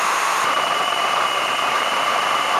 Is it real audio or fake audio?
fake